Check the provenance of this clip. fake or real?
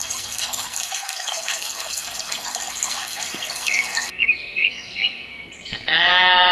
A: fake